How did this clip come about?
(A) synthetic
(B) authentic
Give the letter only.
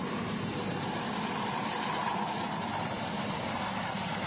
A